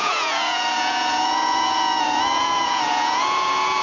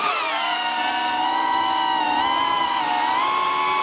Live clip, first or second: second